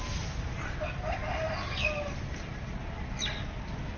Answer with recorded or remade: recorded